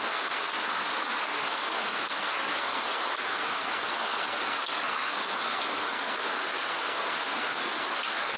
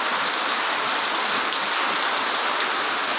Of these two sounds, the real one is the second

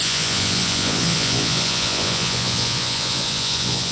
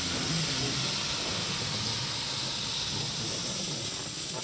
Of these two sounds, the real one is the second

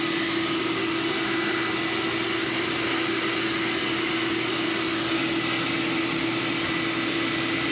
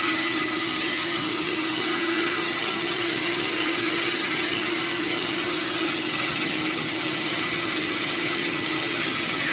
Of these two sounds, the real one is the first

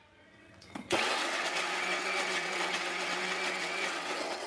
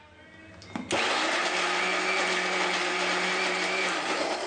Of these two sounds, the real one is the second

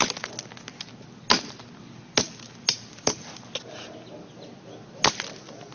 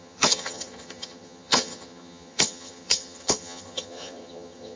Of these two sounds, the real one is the first